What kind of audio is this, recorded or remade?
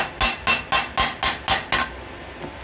recorded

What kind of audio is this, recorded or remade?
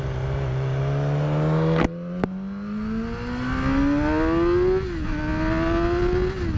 recorded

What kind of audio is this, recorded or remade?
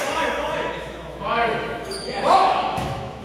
remade